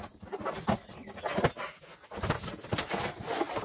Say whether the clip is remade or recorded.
recorded